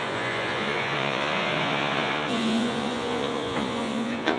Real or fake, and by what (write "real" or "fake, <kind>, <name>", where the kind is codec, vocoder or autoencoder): fake, vocoder, Vocos